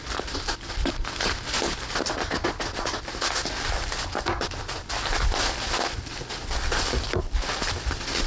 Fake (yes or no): no